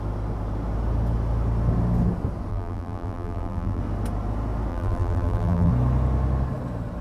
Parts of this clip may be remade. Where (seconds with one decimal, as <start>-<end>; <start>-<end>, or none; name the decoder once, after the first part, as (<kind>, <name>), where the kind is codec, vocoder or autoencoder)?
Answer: 2.5-3.8 (vocoder, BigVGAN v2); 4.7-5.7